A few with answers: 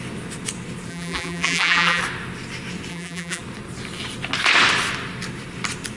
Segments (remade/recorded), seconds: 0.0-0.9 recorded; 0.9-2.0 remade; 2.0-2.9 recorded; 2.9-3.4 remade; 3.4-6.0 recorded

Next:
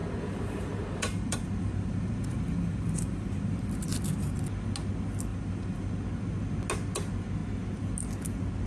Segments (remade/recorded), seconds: 0.0-3.8 remade; 3.8-5.3 recorded; 5.3-5.9 remade; 5.9-8.7 recorded

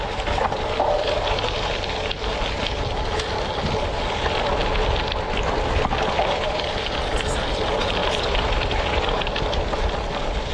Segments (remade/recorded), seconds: 0.0-8.0 recorded; 8.0-9.3 remade; 9.3-10.5 recorded